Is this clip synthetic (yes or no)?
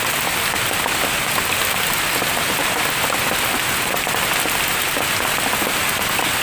no